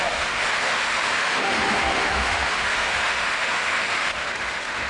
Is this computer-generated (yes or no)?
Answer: yes